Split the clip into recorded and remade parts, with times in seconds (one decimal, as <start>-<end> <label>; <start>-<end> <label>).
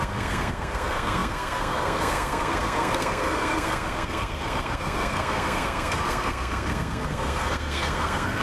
0.0-8.4 remade